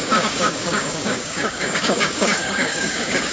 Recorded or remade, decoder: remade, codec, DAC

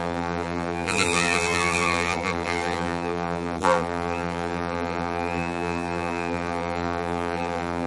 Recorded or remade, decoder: remade, vocoder, BigVGAN v2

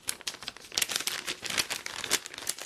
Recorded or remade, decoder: recorded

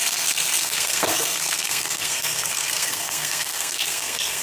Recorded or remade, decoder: remade, codec, SNAC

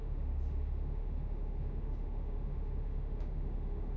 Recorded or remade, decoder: remade, autoencoder, DAC-VAE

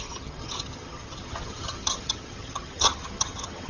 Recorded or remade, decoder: remade, vocoder, HiFi-GAN